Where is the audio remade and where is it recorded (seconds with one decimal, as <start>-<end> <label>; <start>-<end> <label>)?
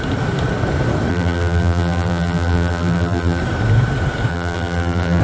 0.0-1.1 recorded; 1.1-3.4 remade; 3.4-4.3 recorded; 4.3-5.2 remade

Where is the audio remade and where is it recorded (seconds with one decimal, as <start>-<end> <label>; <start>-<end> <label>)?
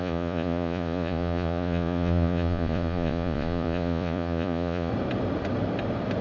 0.0-4.9 remade; 4.9-6.2 recorded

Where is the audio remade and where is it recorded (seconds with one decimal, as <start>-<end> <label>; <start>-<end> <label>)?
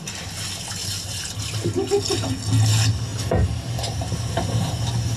0.0-0.8 recorded; 0.8-1.9 remade; 1.9-3.1 recorded; 3.1-5.2 remade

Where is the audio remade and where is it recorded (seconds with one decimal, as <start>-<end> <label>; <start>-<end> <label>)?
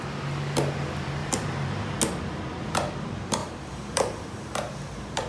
0.0-1.2 recorded; 1.2-2.0 remade; 2.0-3.4 recorded; 3.4-5.3 remade